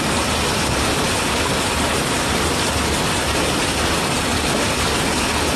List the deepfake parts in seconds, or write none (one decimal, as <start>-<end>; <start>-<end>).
none